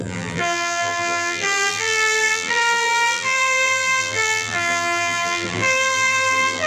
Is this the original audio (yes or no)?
no